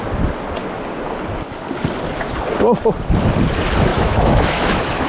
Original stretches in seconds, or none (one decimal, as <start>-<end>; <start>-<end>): 0.0-3.9